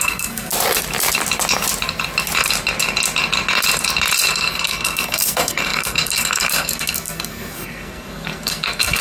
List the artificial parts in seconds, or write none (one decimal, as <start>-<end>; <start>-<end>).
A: 0.0-0.5; 4.3-9.0